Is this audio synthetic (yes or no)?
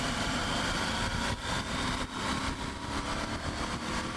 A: no